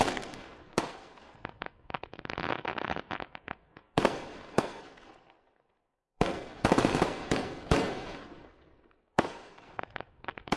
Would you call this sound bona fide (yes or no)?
no